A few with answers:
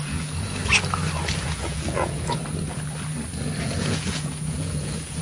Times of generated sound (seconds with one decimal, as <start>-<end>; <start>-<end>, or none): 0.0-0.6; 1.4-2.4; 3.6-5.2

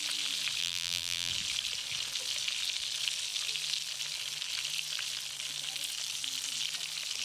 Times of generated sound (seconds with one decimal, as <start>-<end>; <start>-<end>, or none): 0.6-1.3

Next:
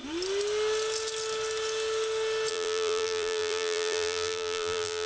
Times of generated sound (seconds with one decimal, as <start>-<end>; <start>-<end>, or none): 2.5-5.1

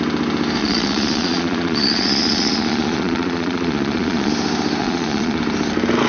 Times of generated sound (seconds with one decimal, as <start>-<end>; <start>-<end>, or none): 0.6-4.3; 4.8-5.4